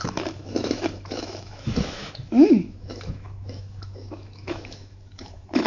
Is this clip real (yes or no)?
no